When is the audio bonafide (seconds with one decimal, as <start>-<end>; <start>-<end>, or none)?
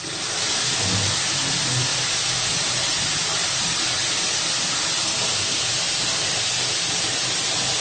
1.9-2.7; 3.4-5.0